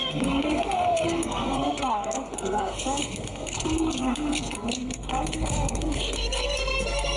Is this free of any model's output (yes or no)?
no